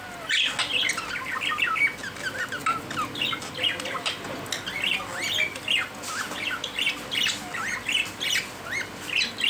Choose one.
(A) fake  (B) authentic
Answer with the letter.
B